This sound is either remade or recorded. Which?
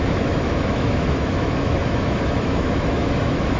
remade